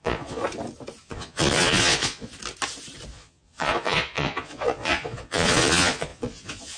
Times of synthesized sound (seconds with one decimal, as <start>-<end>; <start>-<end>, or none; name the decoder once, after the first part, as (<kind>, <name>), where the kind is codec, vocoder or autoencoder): 0.0-0.4 (vocoder, Vocos); 1.0-2.3; 3.1-6.8